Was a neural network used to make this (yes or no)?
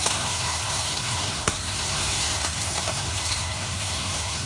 yes